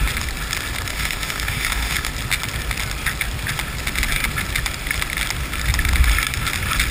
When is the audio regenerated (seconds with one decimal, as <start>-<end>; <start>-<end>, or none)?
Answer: 0.9-2.1